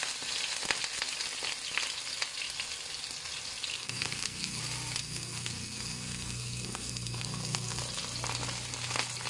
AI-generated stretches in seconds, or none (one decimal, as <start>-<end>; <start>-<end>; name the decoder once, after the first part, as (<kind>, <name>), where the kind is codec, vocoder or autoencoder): 3.7-4.6 (codec, SNAC); 5.0-7.8